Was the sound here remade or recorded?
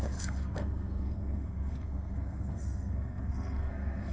remade